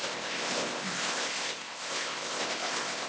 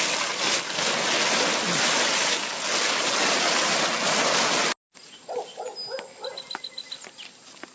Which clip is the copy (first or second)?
first